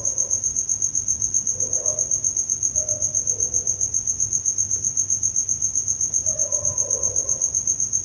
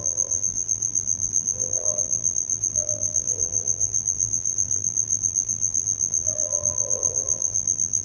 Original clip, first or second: first